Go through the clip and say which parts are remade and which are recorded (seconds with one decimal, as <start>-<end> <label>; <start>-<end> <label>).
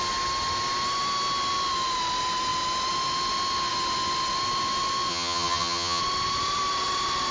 0.0-5.1 recorded; 5.1-6.0 remade; 6.0-7.3 recorded